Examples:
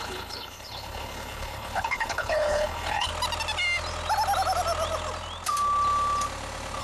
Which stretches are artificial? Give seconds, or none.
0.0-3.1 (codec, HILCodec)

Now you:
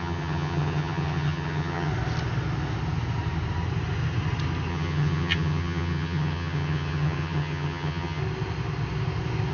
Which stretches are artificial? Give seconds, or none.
0.0-1.9 (vocoder, HiFi-GAN); 4.7-8.2

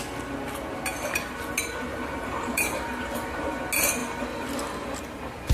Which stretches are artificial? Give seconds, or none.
1.9-3.5 (vocoder, BigVGAN v2)

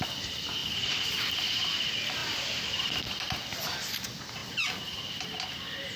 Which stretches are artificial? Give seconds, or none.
0.6-1.3 (vocoder, BigVGAN v2)

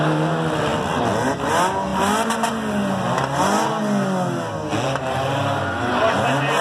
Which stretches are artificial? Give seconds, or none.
none

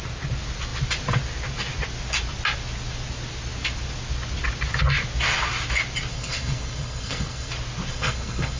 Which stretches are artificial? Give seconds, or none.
6.1-7.5 (codec, SNAC); 7.9-8.6